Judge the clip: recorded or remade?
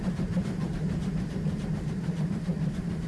remade